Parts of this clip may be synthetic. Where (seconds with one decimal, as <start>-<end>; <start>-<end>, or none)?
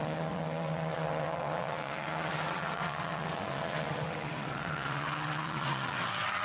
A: 0.0-6.4